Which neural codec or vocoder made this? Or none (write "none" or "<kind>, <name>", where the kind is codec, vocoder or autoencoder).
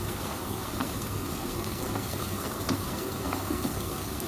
codec, SNAC